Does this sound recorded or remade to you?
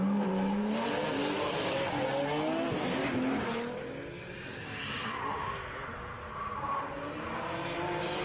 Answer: recorded